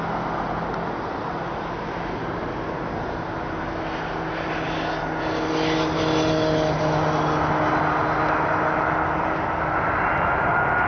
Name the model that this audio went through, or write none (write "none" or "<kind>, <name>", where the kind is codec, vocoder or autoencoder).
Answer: none